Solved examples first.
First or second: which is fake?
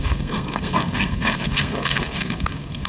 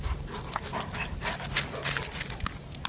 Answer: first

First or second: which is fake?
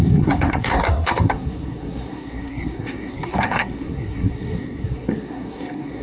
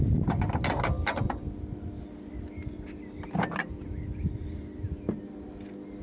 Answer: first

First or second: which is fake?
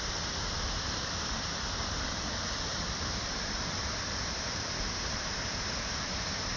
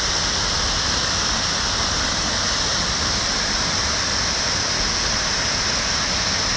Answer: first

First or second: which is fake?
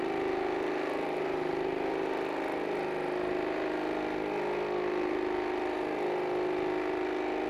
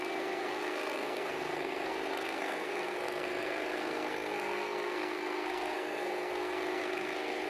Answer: second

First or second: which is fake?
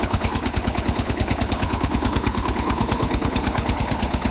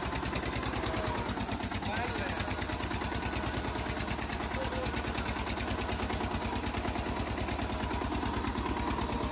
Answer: first